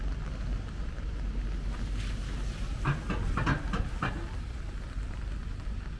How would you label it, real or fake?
real